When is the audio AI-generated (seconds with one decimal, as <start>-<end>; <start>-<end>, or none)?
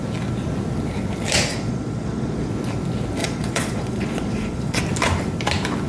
1.5-2.5; 3.2-4.8